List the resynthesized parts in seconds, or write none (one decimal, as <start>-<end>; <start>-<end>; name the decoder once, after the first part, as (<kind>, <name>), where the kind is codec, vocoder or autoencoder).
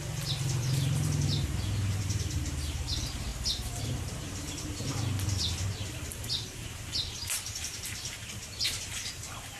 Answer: 0.0-3.3 (vocoder, BigVGAN v2); 4.0-9.6